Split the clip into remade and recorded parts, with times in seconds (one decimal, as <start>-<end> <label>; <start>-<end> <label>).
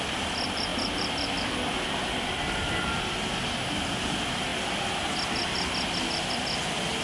0.0-4.5 remade; 4.5-5.1 recorded; 5.1-7.0 remade